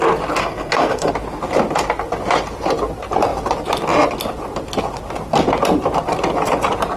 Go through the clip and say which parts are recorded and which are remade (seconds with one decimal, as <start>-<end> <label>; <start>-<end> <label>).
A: 0.0-0.4 recorded; 0.4-1.1 remade; 1.1-7.0 recorded

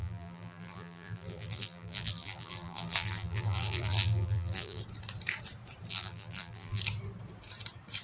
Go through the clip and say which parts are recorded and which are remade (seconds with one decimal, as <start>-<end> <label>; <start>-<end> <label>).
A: 0.0-4.8 remade; 4.8-5.9 recorded; 5.9-6.8 remade; 6.8-8.0 recorded